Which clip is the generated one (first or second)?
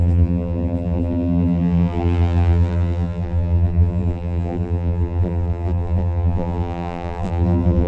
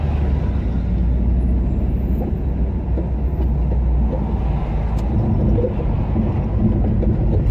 first